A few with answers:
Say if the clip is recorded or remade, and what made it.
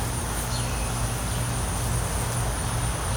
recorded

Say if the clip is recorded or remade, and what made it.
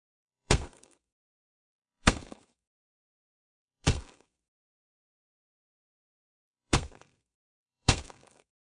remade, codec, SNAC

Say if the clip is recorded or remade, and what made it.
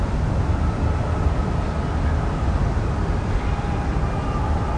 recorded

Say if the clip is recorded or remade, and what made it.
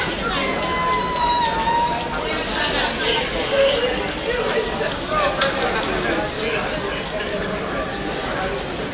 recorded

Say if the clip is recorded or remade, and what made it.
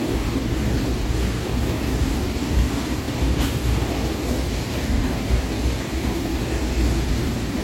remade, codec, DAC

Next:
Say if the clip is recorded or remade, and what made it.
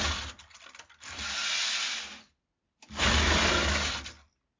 recorded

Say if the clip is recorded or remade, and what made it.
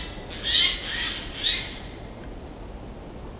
recorded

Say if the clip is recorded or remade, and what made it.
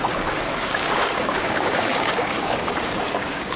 remade, codec, DAC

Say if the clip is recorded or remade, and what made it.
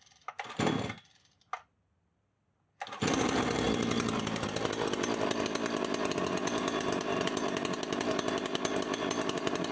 recorded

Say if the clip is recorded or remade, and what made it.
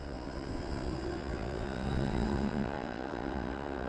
remade, vocoder, WaveNeXt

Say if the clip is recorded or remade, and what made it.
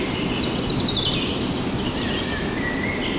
recorded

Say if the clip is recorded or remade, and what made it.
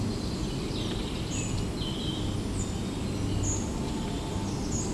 recorded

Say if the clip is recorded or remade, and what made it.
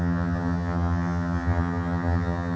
remade, vocoder, HiFi-GAN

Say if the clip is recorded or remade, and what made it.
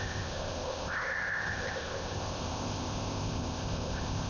remade, codec, ZipCodec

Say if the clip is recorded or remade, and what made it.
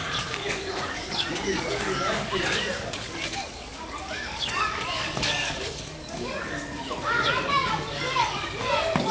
remade, codec, DAC